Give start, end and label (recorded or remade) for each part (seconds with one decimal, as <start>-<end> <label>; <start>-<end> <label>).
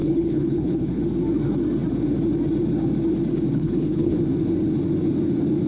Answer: 0.0-1.0 remade; 1.0-3.5 recorded; 3.5-4.2 remade; 4.2-5.7 recorded